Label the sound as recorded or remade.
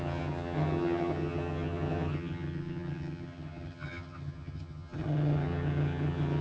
remade